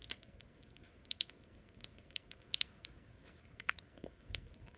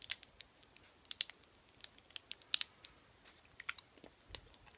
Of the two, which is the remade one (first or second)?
first